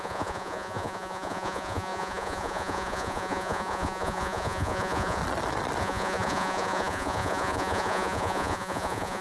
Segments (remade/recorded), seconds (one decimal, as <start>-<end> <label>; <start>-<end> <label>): 0.0-5.2 remade; 5.2-5.8 recorded; 5.8-9.2 remade

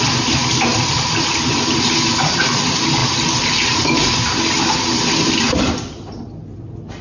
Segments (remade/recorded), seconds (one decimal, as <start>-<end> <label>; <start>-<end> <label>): 0.0-7.0 recorded

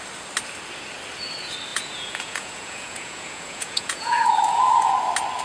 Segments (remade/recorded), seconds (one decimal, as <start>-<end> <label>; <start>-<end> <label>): 0.0-1.7 recorded; 1.7-4.9 remade; 4.9-5.4 recorded